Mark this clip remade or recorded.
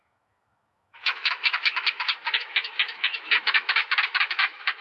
remade